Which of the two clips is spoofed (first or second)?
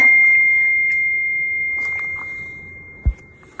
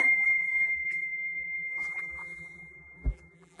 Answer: second